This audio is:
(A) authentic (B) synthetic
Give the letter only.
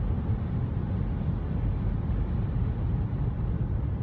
A